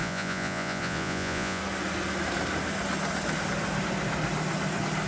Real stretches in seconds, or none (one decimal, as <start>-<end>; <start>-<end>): 1.6-5.1